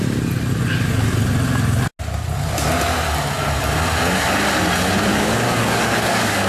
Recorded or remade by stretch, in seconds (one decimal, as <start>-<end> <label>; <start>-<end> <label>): 0.0-5.1 recorded; 5.1-6.5 remade

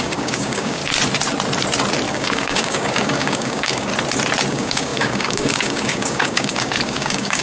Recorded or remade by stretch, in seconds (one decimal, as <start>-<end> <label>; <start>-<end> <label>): 0.0-0.8 remade; 0.8-2.1 recorded; 2.1-3.9 remade; 3.9-4.5 recorded; 4.5-7.4 remade

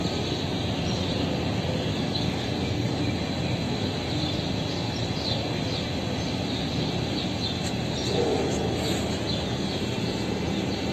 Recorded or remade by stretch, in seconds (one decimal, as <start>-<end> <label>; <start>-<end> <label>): 0.0-1.9 recorded; 1.9-3.0 remade; 3.0-10.9 recorded

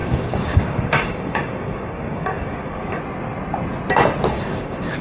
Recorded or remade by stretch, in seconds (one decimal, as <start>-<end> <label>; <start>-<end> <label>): 0.0-3.0 remade; 3.0-4.3 recorded; 4.3-5.0 remade

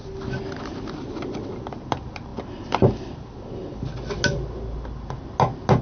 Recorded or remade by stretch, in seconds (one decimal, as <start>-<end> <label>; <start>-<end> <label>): 0.0-5.8 recorded

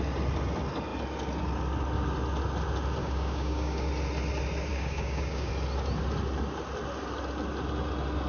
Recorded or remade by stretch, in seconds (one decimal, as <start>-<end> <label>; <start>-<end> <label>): 0.0-3.0 recorded; 3.0-3.9 remade; 3.9-4.7 recorded; 4.7-5.5 remade; 5.5-8.3 recorded

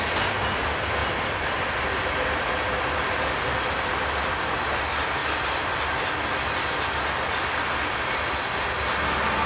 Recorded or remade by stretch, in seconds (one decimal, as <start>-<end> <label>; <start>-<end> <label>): 0.0-9.5 recorded

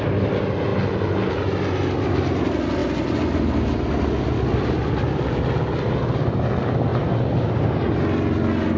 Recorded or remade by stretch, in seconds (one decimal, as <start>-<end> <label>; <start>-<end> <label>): 0.0-8.8 recorded